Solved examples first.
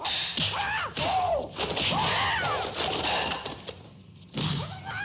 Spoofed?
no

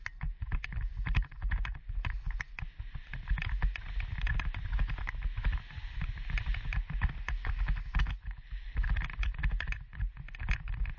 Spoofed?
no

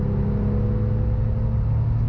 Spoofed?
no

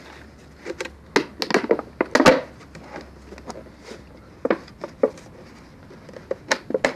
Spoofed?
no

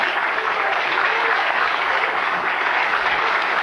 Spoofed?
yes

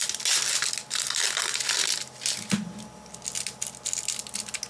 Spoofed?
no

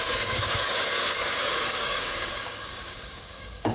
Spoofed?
yes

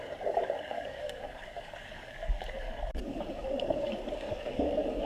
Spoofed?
yes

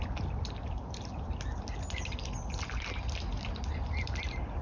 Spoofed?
no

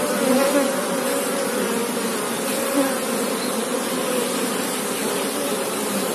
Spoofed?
no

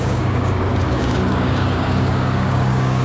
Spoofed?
yes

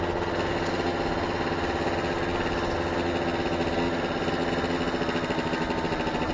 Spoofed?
no